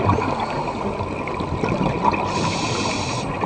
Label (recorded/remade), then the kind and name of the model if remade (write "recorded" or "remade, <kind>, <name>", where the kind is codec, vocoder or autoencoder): recorded